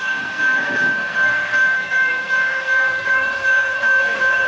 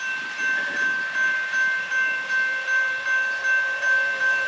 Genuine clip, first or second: second